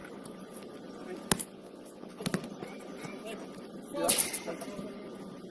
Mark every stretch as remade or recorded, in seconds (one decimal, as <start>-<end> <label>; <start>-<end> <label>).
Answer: 0.0-1.4 recorded; 1.4-2.2 remade; 2.2-5.5 recorded